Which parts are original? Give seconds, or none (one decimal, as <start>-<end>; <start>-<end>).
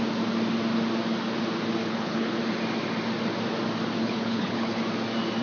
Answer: 0.0-1.8; 2.4-4.0; 4.8-5.4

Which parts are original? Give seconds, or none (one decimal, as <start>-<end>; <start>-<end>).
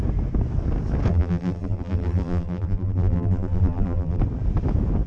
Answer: 0.0-1.1; 4.2-5.1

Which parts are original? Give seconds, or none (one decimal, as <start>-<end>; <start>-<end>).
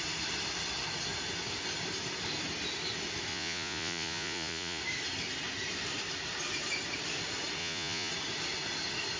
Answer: 0.0-3.3; 4.8-7.6; 8.1-9.2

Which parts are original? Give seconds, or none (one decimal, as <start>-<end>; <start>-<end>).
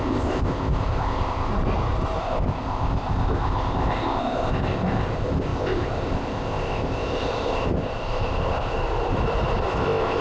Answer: 1.5-2.2; 8.8-9.7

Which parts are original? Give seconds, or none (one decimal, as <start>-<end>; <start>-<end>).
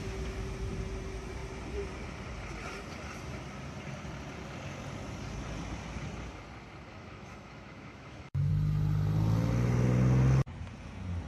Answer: 0.0-6.9; 8.5-11.3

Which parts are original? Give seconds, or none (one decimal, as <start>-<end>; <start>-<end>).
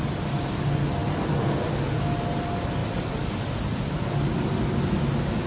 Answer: 0.0-5.5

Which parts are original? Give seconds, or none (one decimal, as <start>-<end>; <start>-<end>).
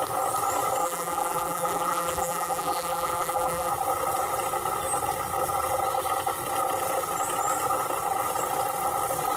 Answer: 0.0-0.8; 3.7-9.4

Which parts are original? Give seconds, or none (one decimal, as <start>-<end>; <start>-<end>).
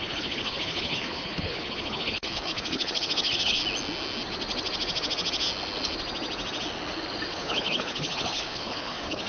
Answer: 3.6-7.3